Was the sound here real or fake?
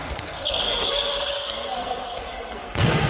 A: fake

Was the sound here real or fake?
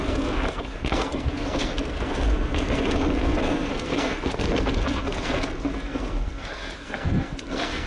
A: fake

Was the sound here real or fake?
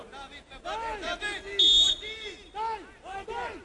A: real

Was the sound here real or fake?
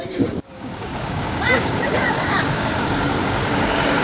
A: fake